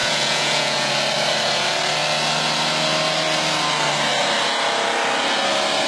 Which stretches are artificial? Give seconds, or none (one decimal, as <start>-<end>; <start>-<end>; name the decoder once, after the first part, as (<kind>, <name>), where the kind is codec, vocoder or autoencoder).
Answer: 0.0-0.9 (vocoder, Vocos)